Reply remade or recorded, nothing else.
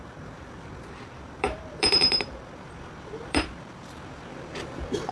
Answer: remade